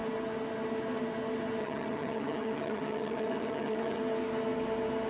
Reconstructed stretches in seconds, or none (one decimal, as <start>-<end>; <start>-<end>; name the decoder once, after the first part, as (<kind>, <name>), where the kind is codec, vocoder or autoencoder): 1.6-4.0 (vocoder, HiFi-GAN)